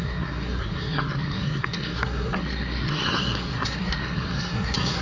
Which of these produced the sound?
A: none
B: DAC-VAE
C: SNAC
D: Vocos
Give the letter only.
C